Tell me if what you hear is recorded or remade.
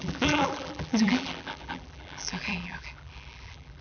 remade